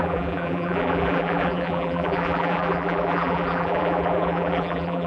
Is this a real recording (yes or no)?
no